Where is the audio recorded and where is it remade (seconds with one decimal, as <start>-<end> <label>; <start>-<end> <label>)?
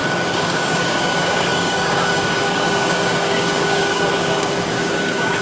0.0-5.4 remade